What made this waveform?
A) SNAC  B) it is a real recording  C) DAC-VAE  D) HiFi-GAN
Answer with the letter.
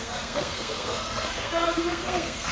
A